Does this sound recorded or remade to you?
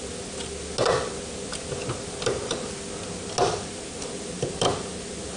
recorded